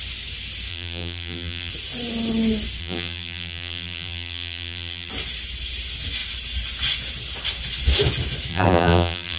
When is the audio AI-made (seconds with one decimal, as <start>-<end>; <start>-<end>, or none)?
0.7-1.7; 2.8-5.1; 8.5-9.4